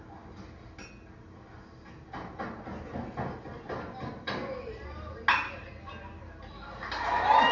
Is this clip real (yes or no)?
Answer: yes